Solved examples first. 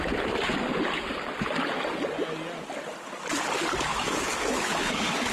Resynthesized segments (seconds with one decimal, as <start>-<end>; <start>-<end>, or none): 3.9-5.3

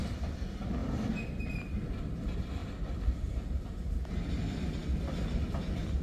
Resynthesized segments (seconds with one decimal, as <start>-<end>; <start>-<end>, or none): none

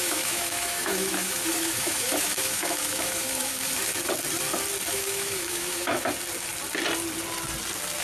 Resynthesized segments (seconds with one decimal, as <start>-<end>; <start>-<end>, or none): 0.0-3.9; 4.9-5.9